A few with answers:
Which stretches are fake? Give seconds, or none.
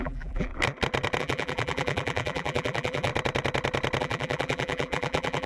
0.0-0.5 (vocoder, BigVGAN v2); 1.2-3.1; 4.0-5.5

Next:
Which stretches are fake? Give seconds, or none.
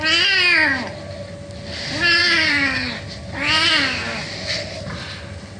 none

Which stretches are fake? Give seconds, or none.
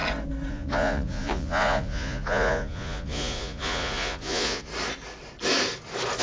0.5-4.7 (vocoder, Vocos)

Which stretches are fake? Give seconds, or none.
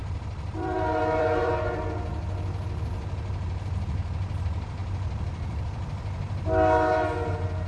0.0-1.5 (vocoder, BigVGAN v2); 4.8-5.6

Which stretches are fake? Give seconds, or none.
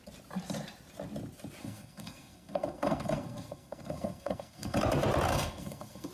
1.6-4.8 (codec, SNAC); 5.3-6.1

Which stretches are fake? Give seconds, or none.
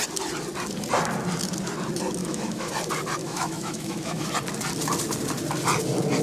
2.2-2.7 (autoencoder, DAC-VAE); 3.2-4.3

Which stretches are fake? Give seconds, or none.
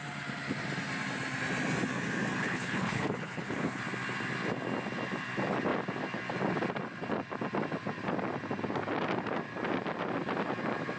2.4-3.8 (codec, HILCodec)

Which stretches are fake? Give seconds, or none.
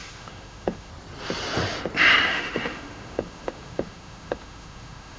0.0-0.9 (autoencoder, DAC-VAE); 2.3-5.2